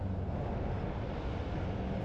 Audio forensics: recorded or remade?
recorded